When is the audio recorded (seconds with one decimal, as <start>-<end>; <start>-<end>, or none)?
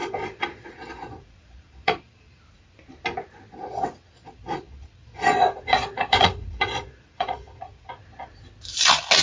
2.4-3.5; 8.3-9.2